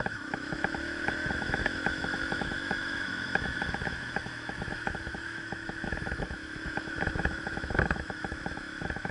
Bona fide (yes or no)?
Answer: no